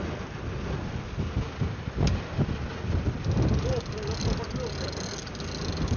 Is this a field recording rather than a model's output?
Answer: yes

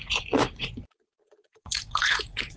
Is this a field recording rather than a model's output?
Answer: no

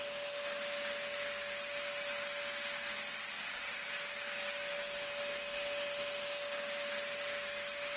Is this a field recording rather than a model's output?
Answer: yes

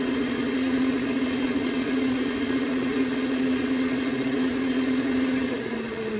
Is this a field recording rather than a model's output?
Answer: no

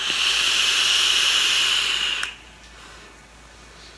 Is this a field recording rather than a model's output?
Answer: yes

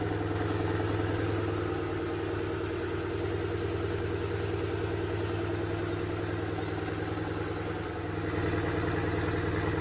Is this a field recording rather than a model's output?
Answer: yes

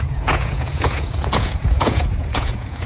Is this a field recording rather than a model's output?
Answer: no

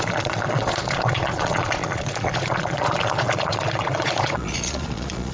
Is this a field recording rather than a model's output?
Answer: no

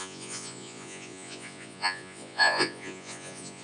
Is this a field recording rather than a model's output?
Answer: no